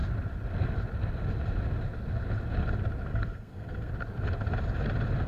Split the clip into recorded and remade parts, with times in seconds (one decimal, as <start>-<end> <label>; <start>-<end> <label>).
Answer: 0.0-3.1 recorded; 3.1-3.9 remade; 3.9-5.3 recorded